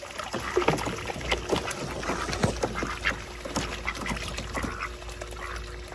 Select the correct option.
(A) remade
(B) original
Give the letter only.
B